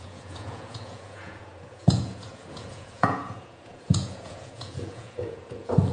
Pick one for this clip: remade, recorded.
remade